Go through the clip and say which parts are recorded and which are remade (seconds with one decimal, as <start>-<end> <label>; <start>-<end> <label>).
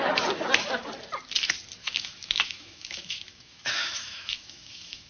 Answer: 0.0-1.8 recorded; 1.8-5.1 remade